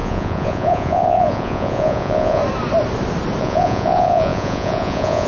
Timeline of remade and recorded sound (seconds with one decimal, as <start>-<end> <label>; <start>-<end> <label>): 0.0-2.4 remade; 2.4-3.4 recorded; 3.4-5.3 remade